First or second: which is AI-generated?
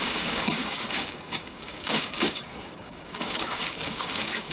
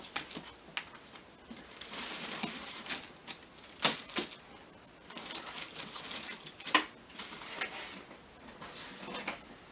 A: first